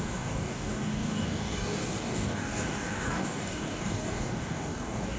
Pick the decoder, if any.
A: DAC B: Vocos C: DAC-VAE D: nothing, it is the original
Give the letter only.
A